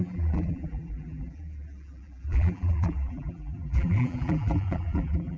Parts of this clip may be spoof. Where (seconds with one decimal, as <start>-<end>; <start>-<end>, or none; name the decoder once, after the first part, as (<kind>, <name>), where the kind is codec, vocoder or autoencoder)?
0.0-5.4 (vocoder, BigVGAN v2)

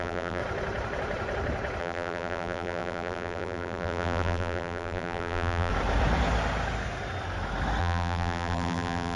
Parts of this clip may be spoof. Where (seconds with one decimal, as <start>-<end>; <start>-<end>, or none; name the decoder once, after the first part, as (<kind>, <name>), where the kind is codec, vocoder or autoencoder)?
0.0-0.4 (vocoder, BigVGAN v2); 1.8-5.7; 7.8-9.2

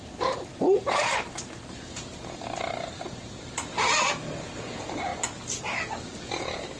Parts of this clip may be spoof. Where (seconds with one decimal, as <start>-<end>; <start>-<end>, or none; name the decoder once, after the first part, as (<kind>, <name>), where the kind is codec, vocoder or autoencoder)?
0.0-5.1 (vocoder, BigVGAN v2); 5.6-6.8

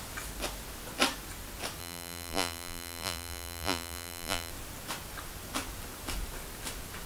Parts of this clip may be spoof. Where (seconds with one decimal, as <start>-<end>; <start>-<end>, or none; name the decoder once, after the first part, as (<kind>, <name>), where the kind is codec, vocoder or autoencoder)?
1.8-4.5 (vocoder, BigVGAN v2)

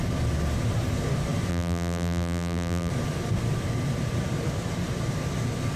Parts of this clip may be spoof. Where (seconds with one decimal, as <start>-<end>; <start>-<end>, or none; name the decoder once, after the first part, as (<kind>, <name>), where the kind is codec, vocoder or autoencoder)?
1.5-2.9 (vocoder, BigVGAN v2)

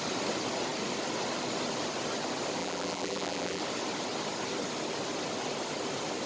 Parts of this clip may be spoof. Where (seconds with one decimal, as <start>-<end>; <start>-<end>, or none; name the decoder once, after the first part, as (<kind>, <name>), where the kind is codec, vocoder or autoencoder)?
2.6-3.6 (vocoder, BigVGAN v2)

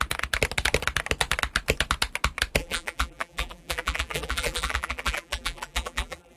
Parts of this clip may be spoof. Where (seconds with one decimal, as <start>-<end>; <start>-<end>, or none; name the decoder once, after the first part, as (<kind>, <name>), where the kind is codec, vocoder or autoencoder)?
2.6-6.4 (vocoder, BigVGAN v2)

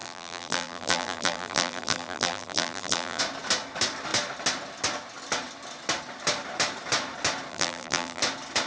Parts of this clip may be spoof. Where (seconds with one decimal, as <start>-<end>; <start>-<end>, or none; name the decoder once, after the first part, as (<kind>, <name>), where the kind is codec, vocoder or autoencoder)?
0.0-3.2 (vocoder, BigVGAN v2); 7.5-8.2